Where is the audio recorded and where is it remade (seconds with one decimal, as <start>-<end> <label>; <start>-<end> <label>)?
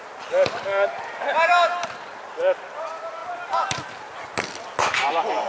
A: 0.0-5.5 recorded